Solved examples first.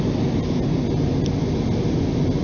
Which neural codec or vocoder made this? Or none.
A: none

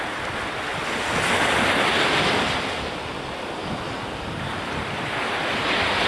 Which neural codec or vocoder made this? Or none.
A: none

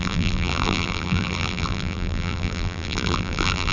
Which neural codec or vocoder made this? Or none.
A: vocoder, BigVGAN v2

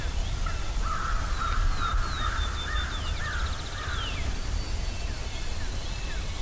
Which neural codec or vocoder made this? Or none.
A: none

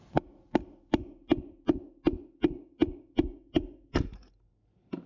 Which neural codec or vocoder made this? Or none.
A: none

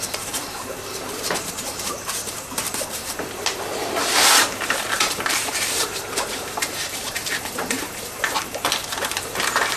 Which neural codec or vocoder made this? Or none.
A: vocoder, BigVGAN v2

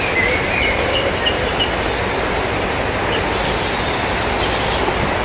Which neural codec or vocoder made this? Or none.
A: none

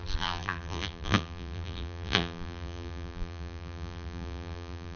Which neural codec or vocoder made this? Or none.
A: vocoder, BigVGAN v2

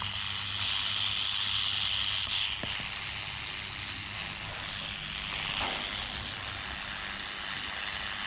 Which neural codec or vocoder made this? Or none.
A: none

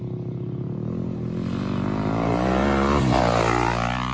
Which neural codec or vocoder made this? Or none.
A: none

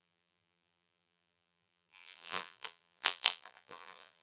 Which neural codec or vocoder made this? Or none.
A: vocoder, BigVGAN v2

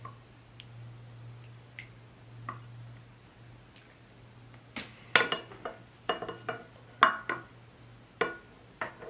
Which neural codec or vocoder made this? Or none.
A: none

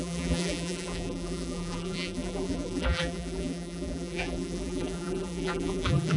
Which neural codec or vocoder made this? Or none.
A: vocoder, BigVGAN v2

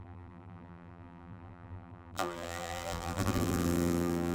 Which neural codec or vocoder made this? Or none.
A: vocoder, BigVGAN v2